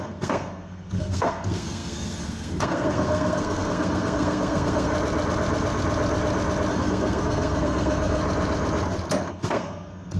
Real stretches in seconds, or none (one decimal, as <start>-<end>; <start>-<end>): 4.9-6.7; 8.2-9.3